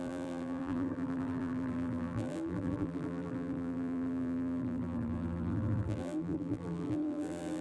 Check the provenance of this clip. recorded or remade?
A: remade